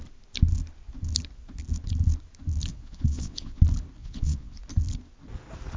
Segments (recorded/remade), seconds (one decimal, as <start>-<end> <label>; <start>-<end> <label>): 0.0-2.7 recorded; 2.7-3.6 remade; 3.6-4.0 recorded; 4.0-4.6 remade; 4.6-5.8 recorded